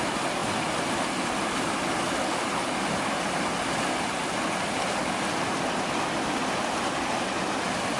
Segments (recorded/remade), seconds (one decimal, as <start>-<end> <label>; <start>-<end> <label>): 0.0-8.0 recorded